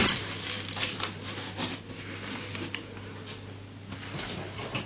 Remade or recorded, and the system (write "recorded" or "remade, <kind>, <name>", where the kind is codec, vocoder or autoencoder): recorded